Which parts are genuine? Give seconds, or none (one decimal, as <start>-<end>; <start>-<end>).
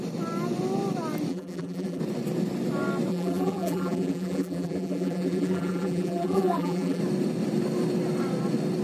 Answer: 0.0-1.3; 2.0-3.1; 7.0-8.8